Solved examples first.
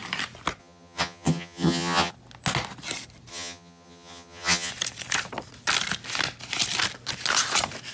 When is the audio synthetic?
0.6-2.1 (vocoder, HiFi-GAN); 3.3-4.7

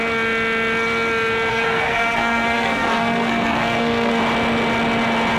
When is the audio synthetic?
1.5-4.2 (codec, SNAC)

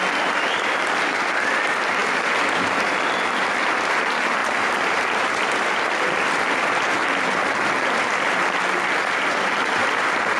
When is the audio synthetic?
none